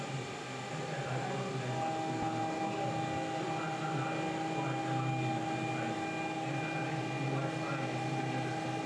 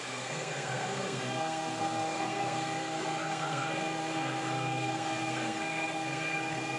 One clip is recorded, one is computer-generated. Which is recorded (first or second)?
first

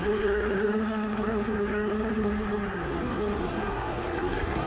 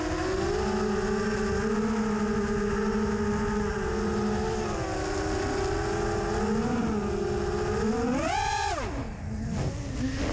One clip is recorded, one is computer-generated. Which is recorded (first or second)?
second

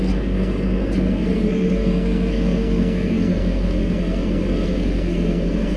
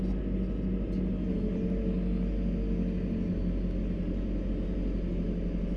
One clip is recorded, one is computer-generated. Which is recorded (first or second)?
second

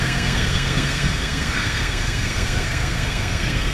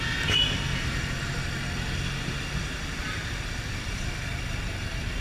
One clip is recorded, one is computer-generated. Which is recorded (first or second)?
second